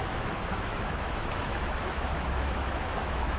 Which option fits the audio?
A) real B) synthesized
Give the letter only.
B